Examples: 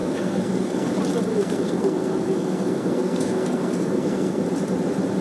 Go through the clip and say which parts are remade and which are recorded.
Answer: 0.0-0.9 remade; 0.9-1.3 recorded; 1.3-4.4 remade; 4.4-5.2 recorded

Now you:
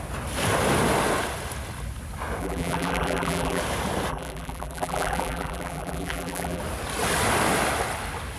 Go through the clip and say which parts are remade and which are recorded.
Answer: 0.0-2.4 recorded; 2.4-3.6 remade; 3.6-4.1 recorded; 4.1-6.6 remade; 6.6-8.4 recorded